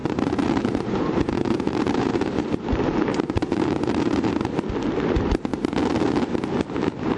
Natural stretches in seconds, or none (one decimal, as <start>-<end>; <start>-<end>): 4.3-7.2